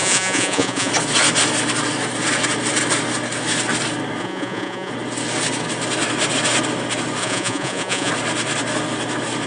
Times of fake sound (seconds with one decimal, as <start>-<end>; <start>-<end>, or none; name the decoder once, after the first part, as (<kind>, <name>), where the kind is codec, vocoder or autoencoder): 0.0-0.9 (vocoder, Vocos); 4.2-4.9; 7.2-8.1